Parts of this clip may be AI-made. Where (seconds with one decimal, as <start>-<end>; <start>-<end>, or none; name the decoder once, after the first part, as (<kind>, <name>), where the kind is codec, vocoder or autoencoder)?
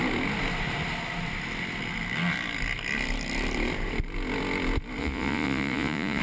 5.0-6.2 (vocoder, Vocos)